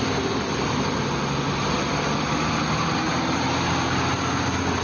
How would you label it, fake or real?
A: real